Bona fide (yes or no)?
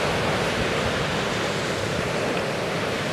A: no